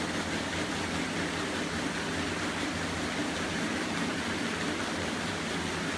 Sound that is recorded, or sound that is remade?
recorded